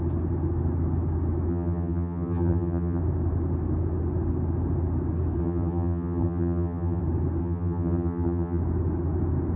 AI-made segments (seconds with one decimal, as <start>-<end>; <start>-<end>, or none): 1.5-3.0; 5.4-7.0; 7.4-8.6